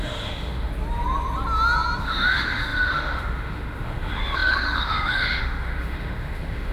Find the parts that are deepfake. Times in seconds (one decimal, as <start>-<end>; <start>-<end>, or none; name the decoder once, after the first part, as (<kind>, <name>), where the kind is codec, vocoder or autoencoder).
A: 0.0-0.7 (autoencoder, DAC-VAE); 2.0-6.7